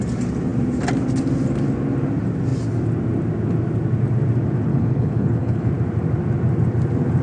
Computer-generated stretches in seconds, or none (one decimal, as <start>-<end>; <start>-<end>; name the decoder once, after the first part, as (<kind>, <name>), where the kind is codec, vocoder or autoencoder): 4.7-5.7 (codec, HILCodec)